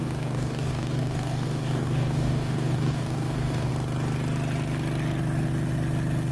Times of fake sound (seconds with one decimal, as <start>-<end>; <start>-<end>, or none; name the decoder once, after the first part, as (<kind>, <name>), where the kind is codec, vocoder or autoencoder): 0.0-3.7 (codec, DAC)